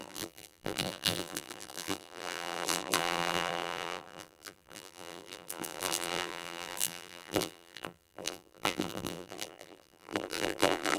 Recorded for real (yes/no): no